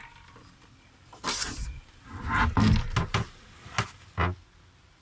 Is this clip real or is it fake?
real